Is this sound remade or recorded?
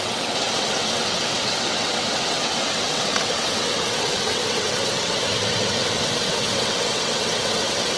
remade